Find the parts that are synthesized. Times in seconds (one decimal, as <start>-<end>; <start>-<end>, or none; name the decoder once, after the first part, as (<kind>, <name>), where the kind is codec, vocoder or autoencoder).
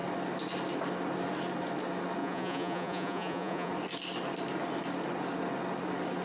2.2-3.7 (vocoder, Vocos)